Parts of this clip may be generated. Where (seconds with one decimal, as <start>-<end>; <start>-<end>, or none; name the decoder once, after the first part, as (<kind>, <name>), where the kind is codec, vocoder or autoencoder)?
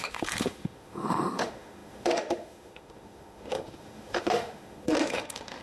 0.0-5.6 (autoencoder, DAC-VAE)